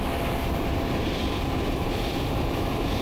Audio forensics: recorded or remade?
remade